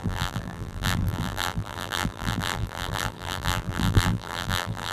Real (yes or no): no